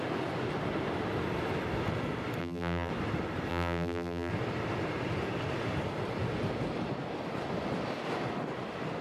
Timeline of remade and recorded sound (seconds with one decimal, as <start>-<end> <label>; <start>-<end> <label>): 0.0-2.4 recorded; 2.4-2.9 remade; 2.9-3.5 recorded; 3.5-4.3 remade; 4.3-9.0 recorded